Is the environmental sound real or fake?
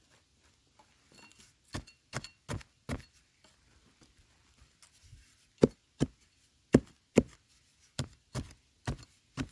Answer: real